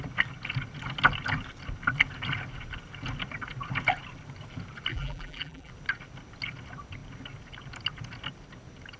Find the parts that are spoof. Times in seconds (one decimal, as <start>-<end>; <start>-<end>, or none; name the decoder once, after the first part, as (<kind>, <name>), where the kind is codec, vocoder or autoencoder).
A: 4.9-5.7 (vocoder, BigVGAN v2)